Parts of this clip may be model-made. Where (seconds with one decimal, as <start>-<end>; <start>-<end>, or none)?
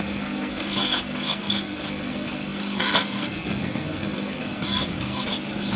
0.0-5.8